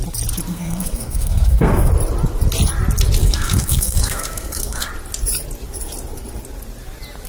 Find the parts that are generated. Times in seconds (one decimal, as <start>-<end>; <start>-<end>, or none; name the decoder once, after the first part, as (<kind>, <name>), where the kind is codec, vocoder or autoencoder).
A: 0.5-1.9 (codec, SNAC); 3.2-4.9